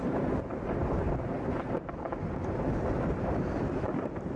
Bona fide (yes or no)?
yes